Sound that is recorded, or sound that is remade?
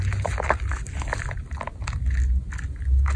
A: recorded